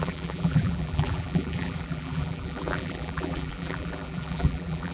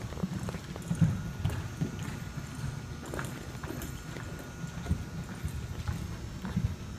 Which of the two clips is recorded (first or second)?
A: second